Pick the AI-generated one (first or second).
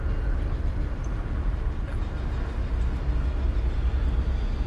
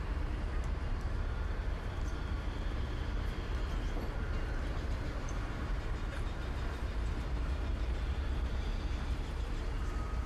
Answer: second